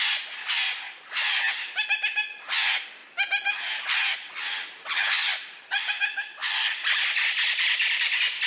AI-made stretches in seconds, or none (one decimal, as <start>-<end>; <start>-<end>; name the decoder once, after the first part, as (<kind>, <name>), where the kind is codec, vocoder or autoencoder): 5.2-5.9 (vocoder, BigVGAN v2); 6.4-8.5